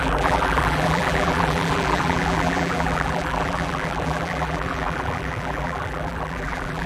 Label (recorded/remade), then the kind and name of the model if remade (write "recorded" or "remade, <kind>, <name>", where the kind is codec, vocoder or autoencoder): remade, vocoder, BigVGAN v2